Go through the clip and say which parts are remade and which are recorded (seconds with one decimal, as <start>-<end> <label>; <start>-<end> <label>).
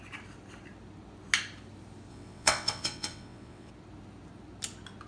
0.0-2.1 recorded; 2.1-3.7 remade; 3.7-5.1 recorded